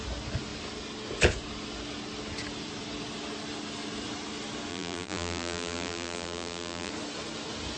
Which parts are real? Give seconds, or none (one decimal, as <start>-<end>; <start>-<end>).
0.0-4.7; 6.9-7.8